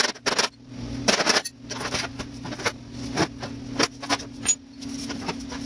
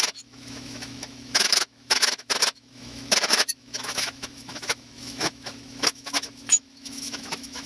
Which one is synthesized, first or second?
second